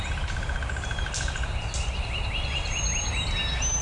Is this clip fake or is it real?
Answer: real